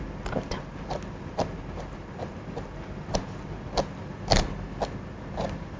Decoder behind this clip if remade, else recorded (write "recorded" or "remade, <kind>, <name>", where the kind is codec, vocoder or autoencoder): recorded